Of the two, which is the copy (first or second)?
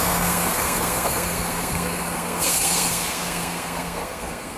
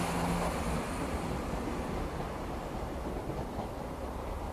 first